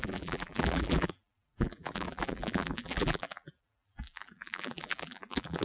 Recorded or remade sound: remade